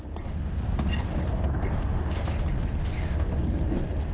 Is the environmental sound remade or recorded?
recorded